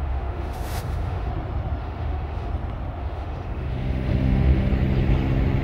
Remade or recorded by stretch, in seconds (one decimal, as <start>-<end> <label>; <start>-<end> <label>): 0.0-1.3 remade; 1.3-1.8 recorded; 1.8-2.5 remade; 2.5-3.0 recorded; 3.0-4.7 remade; 4.7-5.6 recorded